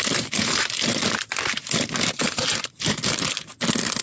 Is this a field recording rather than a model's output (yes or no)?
yes